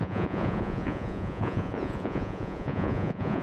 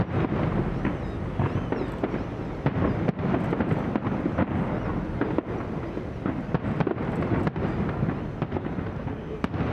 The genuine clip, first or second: second